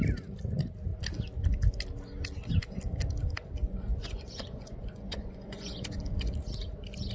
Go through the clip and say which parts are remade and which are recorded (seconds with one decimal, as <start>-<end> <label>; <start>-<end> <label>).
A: 0.0-3.6 recorded; 3.6-6.0 remade; 6.0-7.1 recorded